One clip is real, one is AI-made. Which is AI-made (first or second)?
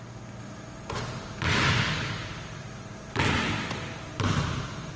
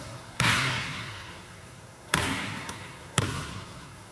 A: second